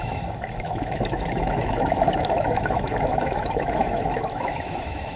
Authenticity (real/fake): fake